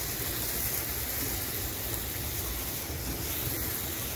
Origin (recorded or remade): recorded